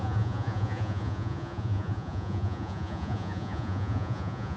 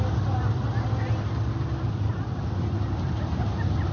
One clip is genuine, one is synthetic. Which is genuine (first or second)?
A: second